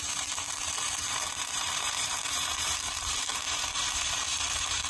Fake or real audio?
fake